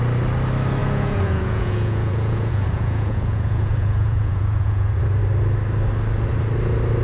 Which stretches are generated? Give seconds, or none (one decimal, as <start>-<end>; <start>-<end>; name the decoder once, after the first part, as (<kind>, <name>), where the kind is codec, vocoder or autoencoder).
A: 0.8-5.0 (vocoder, Vocos)